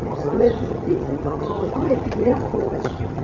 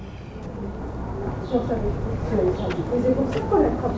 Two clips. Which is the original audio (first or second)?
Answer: second